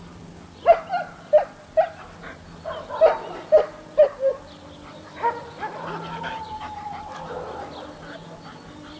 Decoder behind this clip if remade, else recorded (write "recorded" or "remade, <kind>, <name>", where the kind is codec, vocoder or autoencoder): recorded